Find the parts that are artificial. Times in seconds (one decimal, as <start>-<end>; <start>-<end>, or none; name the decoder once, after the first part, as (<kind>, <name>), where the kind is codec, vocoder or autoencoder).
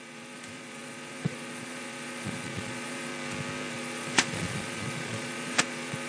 0.0-3.1 (vocoder, Vocos); 3.7-6.1